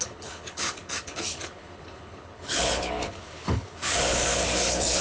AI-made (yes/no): yes